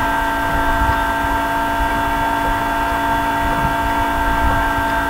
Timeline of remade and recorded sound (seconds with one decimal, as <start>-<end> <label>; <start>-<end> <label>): 0.0-5.1 recorded